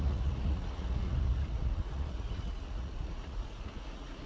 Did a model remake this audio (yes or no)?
yes